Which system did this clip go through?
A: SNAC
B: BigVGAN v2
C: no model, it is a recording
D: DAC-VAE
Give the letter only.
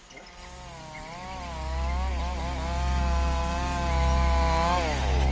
C